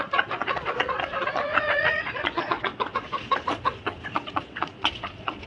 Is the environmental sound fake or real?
fake